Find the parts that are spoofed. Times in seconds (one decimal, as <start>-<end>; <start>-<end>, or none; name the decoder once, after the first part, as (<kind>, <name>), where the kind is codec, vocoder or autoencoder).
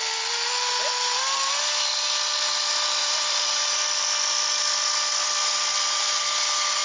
3.0-3.8 (vocoder, BigVGAN v2)